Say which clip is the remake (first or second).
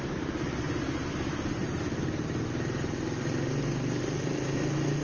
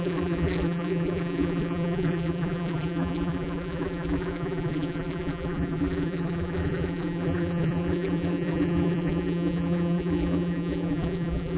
second